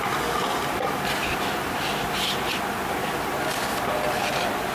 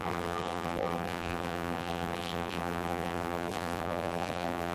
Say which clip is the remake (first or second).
second